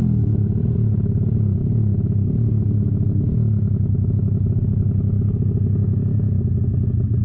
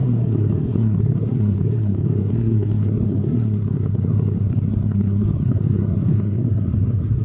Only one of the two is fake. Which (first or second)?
second